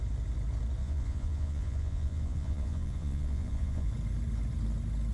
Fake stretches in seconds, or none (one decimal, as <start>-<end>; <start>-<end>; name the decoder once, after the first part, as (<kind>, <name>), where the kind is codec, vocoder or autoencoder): 0.8-3.9 (vocoder, Vocos)